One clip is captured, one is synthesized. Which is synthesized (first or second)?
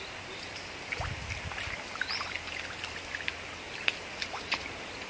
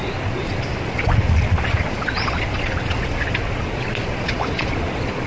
second